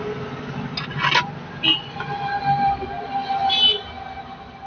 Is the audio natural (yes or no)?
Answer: yes